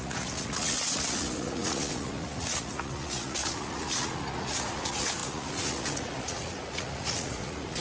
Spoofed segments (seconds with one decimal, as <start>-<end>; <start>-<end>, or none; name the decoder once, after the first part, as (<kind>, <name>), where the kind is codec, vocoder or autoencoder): 0.0-7.8 (vocoder, Vocos)